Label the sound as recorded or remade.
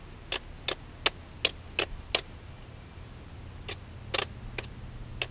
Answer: recorded